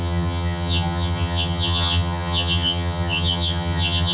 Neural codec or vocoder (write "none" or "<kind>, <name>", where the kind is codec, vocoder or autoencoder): vocoder, HiFi-GAN